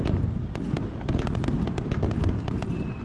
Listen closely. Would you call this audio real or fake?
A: real